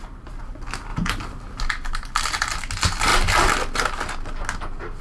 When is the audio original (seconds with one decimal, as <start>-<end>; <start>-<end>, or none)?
0.0-5.0